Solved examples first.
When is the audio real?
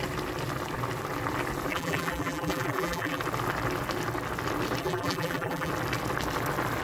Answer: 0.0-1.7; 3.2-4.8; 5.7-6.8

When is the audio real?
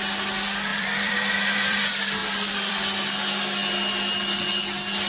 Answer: 0.0-0.7; 1.8-5.1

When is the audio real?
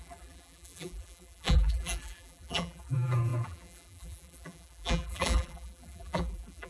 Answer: none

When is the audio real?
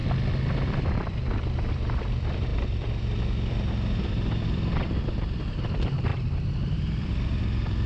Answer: 0.0-0.8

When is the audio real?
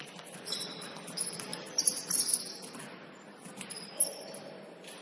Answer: 0.0-5.0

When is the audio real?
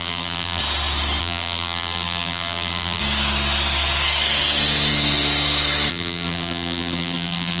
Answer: 0.6-1.2; 3.0-5.9